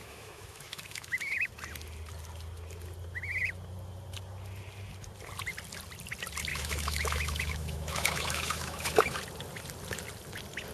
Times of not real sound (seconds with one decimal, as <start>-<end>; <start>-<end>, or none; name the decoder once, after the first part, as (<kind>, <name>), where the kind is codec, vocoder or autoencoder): 0.0-1.5 (autoencoder, DAC-VAE); 6.5-9.2